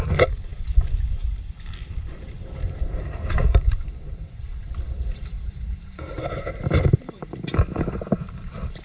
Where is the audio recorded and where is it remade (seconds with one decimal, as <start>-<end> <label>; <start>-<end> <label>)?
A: 0.0-0.5 remade; 0.5-2.0 recorded; 2.0-8.8 remade